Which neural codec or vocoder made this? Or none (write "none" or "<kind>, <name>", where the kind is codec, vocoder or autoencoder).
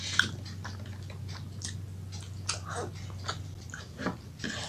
none